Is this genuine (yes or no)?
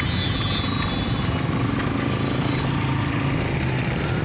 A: yes